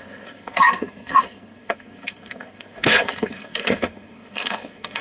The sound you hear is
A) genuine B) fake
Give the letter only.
B